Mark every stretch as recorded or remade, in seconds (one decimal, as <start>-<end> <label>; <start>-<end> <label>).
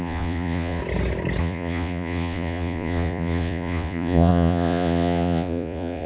0.0-0.8 remade; 0.8-1.4 recorded; 1.4-6.1 remade